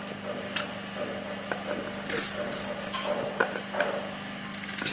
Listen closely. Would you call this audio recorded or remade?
recorded